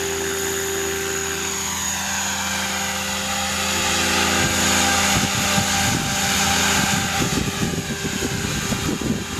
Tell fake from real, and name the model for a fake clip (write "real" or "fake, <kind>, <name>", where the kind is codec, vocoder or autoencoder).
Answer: real